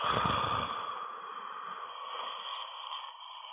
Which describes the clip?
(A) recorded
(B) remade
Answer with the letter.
A